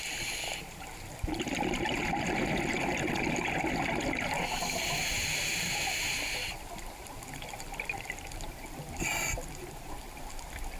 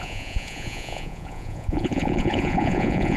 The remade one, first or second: second